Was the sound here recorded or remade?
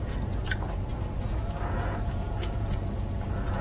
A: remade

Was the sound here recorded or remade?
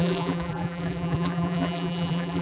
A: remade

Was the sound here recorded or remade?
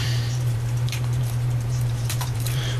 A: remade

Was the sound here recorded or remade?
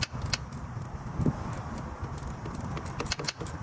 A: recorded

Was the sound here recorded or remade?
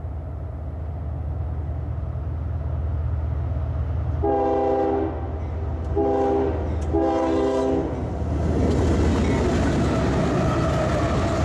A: recorded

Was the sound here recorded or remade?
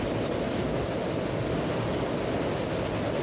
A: recorded